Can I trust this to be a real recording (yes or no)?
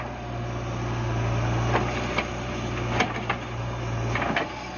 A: yes